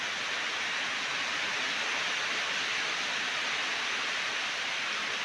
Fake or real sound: real